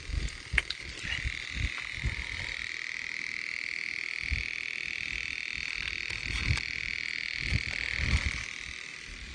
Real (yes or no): yes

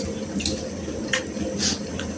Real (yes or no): yes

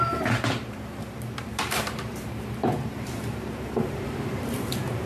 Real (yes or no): no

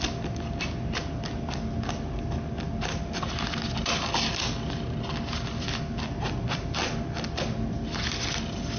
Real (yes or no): yes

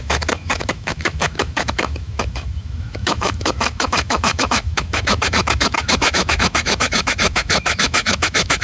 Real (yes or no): no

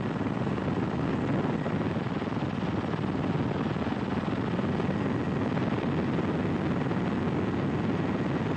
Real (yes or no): yes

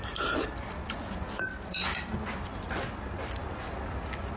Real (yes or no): yes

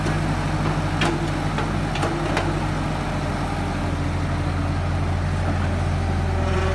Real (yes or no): yes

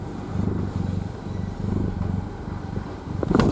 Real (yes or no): yes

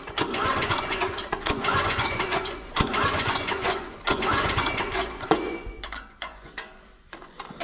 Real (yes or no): no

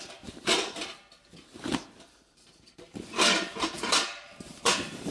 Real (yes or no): no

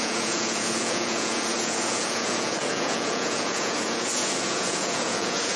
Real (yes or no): no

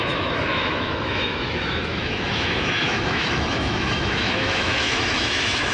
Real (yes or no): no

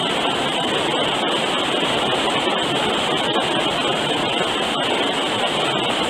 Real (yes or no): yes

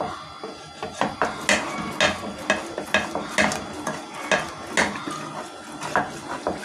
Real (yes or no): yes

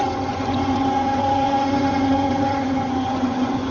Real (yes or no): no